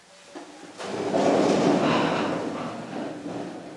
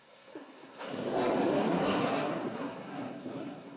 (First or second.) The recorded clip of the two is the first